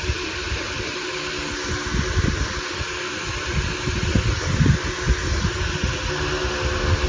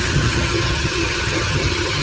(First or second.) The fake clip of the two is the second